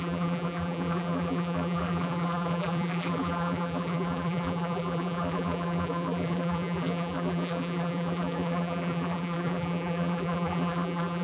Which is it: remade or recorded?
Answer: remade